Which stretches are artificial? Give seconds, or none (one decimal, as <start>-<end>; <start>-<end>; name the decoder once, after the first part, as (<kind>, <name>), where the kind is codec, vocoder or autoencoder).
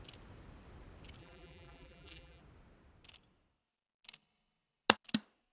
1.2-2.4 (vocoder, BigVGAN v2)